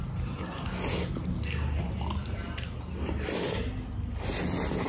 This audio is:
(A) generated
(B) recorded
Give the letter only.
B